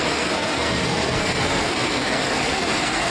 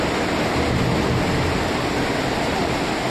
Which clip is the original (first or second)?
second